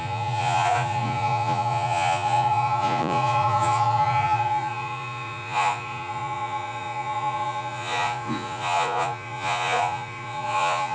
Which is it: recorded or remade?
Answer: remade